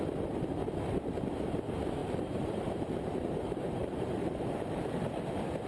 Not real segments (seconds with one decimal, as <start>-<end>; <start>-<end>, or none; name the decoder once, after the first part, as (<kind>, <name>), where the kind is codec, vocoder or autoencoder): 2.0-5.3 (vocoder, BigVGAN v2)